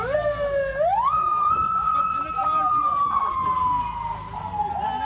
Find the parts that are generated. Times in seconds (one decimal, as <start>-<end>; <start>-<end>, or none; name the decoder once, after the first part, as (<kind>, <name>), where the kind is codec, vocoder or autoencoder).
1.1-2.2 (vocoder, Vocos); 2.7-3.5

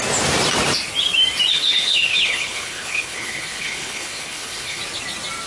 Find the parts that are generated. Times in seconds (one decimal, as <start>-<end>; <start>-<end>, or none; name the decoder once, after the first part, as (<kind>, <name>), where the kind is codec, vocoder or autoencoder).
1.5-4.8 (codec, HILCodec)

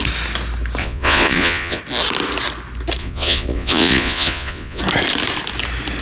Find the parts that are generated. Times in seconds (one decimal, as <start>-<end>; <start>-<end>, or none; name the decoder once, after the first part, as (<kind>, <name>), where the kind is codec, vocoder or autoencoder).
0.8-1.8 (vocoder, Vocos); 3.0-4.8

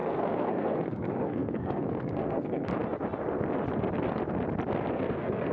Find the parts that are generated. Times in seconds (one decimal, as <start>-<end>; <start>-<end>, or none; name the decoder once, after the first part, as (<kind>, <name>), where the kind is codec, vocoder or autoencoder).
0.0-2.7 (codec, SNAC); 4.9-5.5

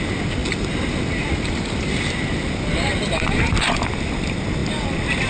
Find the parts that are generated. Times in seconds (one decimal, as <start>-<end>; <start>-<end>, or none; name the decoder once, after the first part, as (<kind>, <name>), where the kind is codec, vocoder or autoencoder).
none